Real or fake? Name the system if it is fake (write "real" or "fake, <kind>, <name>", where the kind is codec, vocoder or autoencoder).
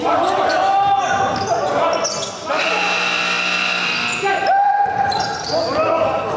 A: real